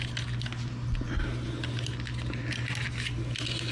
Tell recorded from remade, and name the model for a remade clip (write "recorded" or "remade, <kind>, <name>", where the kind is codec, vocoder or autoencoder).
recorded